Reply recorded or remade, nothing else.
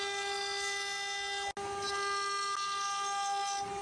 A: recorded